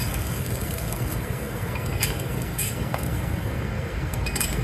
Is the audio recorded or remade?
remade